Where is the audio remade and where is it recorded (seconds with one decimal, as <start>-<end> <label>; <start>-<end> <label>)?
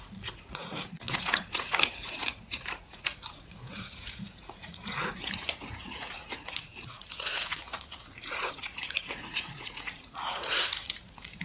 0.0-11.4 remade